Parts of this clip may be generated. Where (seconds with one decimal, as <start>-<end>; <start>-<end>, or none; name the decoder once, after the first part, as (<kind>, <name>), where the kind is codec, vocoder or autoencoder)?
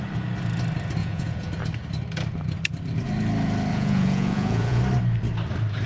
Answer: 1.0-1.5 (vocoder, Vocos); 3.7-4.8